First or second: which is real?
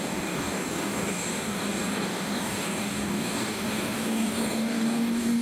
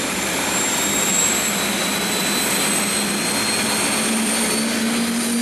second